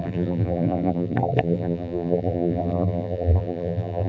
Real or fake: fake